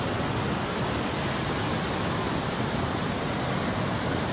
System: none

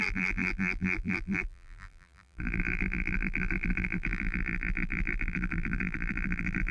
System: vocoder, BigVGAN v2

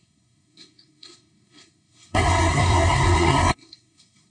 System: codec, SNAC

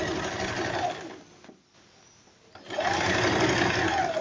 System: none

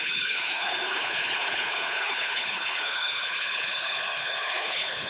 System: codec, HILCodec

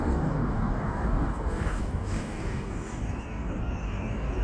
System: codec, DAC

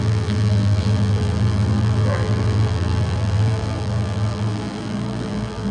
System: vocoder, BigVGAN v2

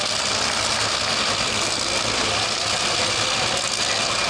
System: none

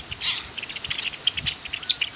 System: none